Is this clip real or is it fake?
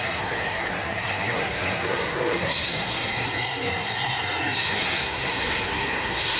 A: fake